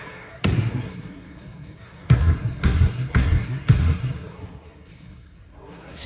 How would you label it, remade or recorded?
remade